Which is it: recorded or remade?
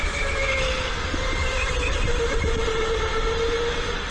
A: recorded